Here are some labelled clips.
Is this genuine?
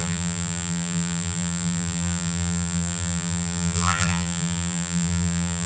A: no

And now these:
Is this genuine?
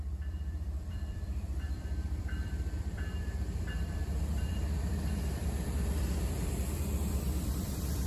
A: no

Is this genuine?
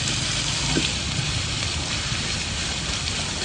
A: yes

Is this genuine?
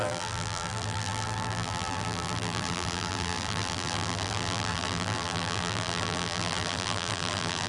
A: no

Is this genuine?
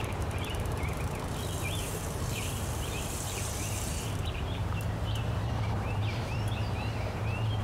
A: no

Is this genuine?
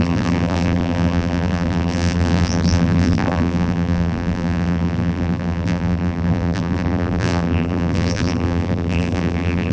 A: no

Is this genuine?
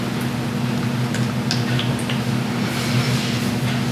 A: yes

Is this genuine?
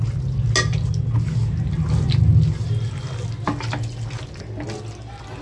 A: yes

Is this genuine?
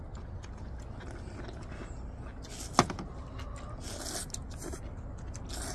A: yes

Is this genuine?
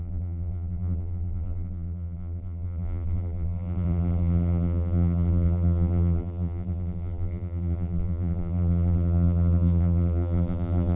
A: no